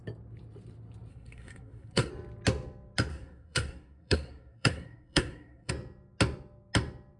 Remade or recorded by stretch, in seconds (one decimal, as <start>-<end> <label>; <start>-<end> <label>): 0.0-1.1 recorded; 1.1-2.1 remade; 2.1-3.1 recorded; 3.1-5.7 remade; 5.7-7.2 recorded